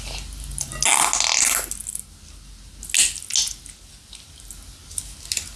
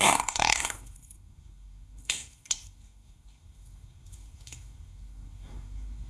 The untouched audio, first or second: first